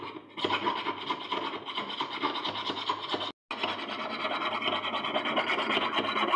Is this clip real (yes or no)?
yes